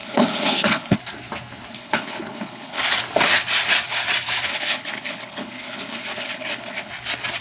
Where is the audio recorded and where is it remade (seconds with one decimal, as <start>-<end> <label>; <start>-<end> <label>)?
0.0-1.0 remade; 1.0-1.7 recorded; 1.7-2.8 remade; 2.8-4.5 recorded; 4.5-6.9 remade; 6.9-7.4 recorded